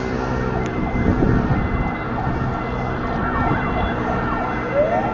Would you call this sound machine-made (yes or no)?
no